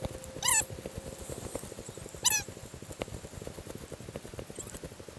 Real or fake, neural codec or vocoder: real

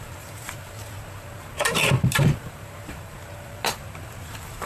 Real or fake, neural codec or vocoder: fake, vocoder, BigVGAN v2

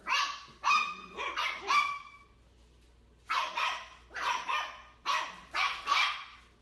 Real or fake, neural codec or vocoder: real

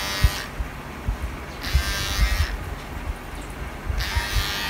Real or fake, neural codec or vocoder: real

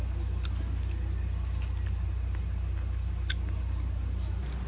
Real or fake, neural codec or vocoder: real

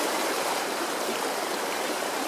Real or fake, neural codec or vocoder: fake, vocoder, BigVGAN v2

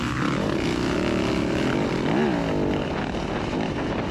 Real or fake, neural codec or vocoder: real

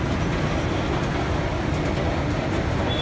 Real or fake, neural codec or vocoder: real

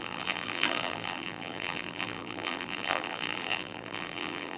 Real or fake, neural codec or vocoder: fake, vocoder, BigVGAN v2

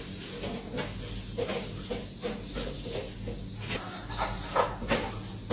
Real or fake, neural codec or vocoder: real